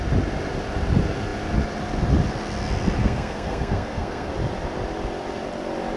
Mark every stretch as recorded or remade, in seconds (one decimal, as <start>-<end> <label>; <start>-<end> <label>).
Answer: 0.0-3.0 recorded; 3.0-4.3 remade; 4.3-6.0 recorded